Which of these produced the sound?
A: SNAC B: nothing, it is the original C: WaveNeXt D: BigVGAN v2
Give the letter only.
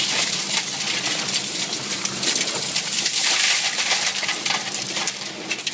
D